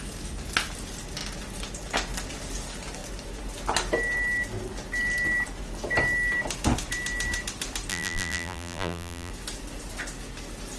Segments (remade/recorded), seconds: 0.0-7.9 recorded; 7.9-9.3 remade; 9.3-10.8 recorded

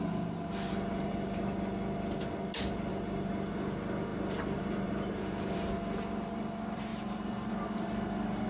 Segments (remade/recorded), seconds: 0.0-0.7 recorded; 0.7-1.4 remade; 1.4-2.9 recorded; 2.9-3.5 remade; 3.5-4.1 recorded; 4.1-5.3 remade; 5.3-6.9 recorded; 6.9-7.5 remade; 7.5-8.5 recorded